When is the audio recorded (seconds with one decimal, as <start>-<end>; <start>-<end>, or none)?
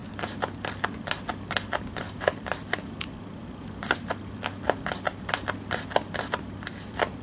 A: 0.0-1.7; 5.1-6.3